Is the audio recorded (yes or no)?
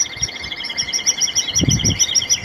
yes